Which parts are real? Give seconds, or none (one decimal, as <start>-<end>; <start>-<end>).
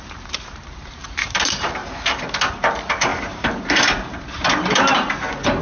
1.8-2.5